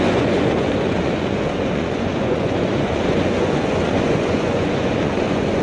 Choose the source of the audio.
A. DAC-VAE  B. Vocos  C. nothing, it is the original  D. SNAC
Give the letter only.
B